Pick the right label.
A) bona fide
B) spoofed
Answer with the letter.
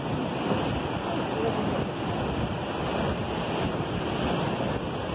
A